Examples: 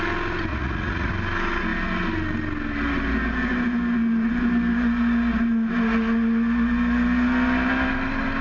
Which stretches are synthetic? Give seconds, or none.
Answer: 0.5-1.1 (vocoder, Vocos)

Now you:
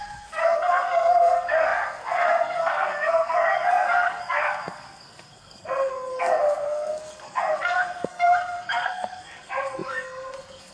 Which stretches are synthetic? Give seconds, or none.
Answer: 0.0-10.7 (codec, SNAC)

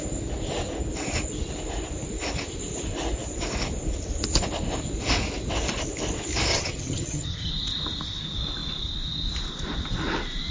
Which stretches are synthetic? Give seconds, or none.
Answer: 6.5-7.5 (vocoder, HiFi-GAN)

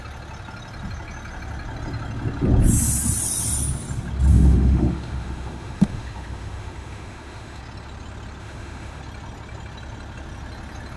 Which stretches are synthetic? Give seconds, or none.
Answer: 4.3-7.6 (autoencoder, DAC-VAE); 8.4-9.0

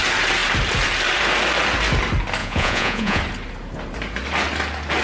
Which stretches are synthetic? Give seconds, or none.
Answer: 2.4-3.2 (vocoder, Vocos)

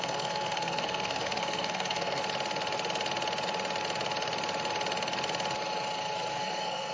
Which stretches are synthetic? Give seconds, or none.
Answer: 0.0-2.2 (codec, SNAC); 6.3-6.9